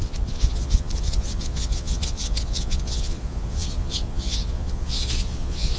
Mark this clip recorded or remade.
remade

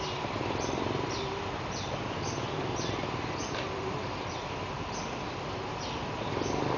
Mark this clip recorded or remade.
recorded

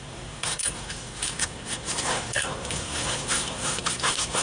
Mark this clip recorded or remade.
remade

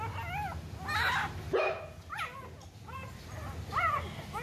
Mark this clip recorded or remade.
recorded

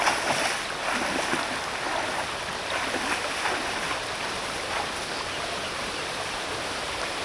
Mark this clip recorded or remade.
recorded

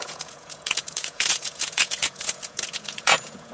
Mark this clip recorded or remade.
remade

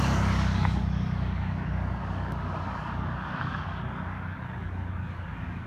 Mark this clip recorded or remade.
remade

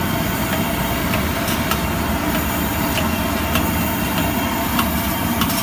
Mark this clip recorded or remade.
recorded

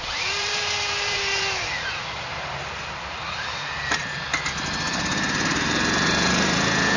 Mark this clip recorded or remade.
remade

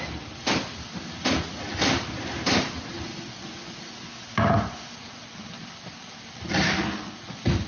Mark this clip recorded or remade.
recorded